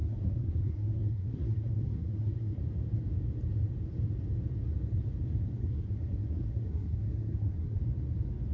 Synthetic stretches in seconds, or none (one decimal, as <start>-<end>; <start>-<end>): 0.0-2.6; 5.6-7.8

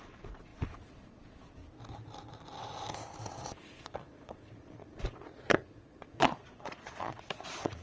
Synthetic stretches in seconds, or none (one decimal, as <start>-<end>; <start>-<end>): 0.0-1.6; 3.3-7.8

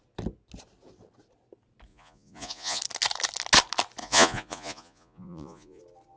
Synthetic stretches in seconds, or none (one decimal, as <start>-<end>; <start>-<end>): 1.9-2.8; 4.0-5.8

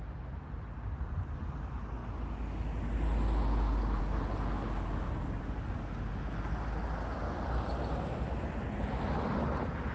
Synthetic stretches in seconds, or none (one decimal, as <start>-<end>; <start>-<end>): none

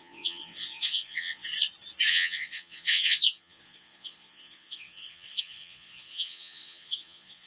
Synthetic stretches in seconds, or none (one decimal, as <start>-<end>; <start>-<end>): 0.0-1.5; 2.1-7.5

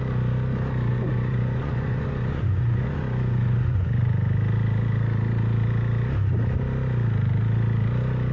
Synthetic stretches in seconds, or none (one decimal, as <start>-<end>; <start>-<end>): 0.9-4.1